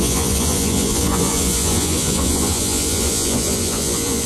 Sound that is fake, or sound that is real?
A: fake